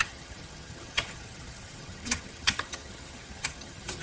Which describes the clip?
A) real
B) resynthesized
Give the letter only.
B